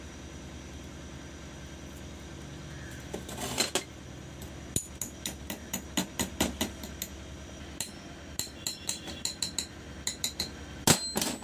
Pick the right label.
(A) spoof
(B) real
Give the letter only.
B